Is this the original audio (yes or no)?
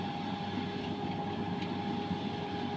yes